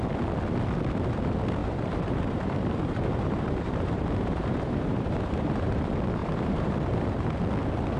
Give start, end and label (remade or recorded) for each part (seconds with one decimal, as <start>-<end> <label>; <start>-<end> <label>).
0.0-1.6 recorded; 1.6-5.8 remade; 5.8-6.2 recorded; 6.2-7.3 remade; 7.3-8.0 recorded